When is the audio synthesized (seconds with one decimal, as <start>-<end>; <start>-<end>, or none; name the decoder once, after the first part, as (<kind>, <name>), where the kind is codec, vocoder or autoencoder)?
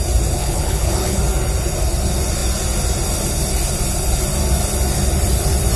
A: 0.4-1.2 (codec, HILCodec)